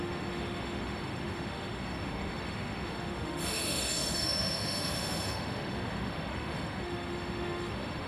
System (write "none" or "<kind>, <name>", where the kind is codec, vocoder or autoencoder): autoencoder, DAC-VAE